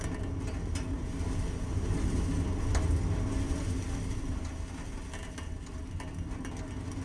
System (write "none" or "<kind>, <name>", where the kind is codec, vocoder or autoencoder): none